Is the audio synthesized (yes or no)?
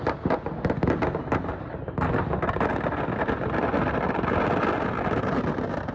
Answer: no